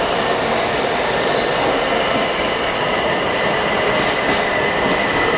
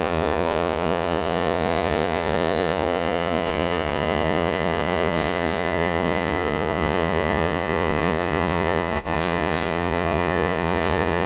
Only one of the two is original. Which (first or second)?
first